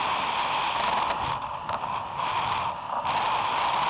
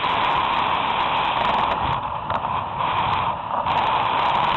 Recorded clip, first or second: first